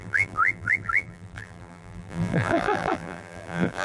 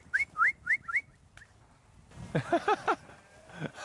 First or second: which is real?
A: second